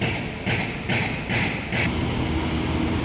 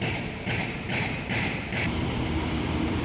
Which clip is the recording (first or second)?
first